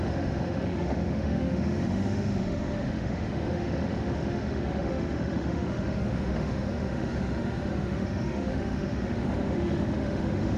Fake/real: fake